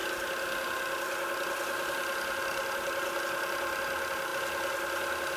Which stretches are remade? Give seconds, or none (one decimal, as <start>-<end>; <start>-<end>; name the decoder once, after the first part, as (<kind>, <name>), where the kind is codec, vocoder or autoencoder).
none